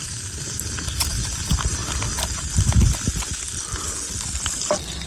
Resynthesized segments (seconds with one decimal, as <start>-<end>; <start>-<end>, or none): 0.0-1.8